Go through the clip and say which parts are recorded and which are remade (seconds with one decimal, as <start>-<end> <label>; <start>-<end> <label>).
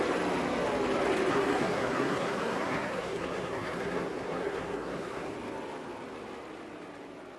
0.0-1.3 recorded; 1.3-5.3 remade; 5.3-7.4 recorded